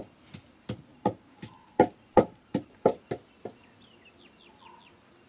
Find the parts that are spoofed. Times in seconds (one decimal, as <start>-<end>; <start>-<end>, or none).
0.9-3.0